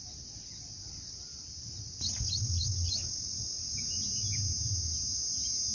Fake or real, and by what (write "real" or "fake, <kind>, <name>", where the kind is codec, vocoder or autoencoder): real